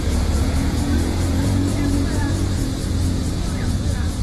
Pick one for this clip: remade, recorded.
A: remade